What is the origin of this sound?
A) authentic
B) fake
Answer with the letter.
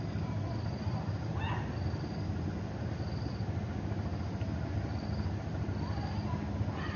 A